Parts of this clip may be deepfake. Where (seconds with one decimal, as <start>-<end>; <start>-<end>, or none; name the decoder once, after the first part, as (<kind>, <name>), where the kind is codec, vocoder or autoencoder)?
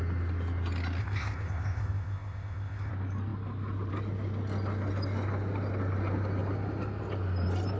1.0-2.9 (codec, ZipCodec)